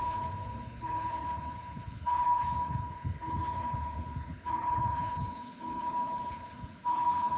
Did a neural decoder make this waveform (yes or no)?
yes